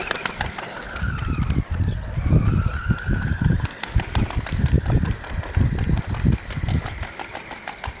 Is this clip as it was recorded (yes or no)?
no